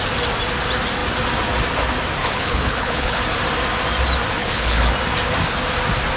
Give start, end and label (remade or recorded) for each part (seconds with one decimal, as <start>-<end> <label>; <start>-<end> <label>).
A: 0.0-2.2 recorded; 2.2-3.2 remade; 3.2-4.4 recorded; 4.4-4.9 remade; 4.9-6.2 recorded